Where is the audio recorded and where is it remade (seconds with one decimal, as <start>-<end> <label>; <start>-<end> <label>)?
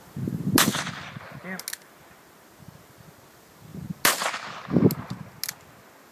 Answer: 0.0-6.1 recorded